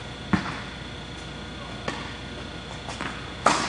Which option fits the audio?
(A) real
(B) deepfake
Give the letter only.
A